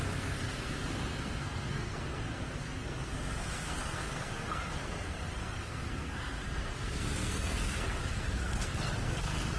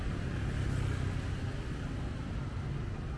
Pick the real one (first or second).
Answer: second